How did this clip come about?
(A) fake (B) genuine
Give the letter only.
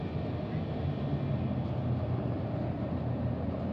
B